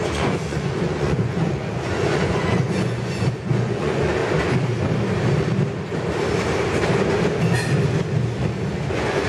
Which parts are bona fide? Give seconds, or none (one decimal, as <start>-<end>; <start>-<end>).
4.2-8.9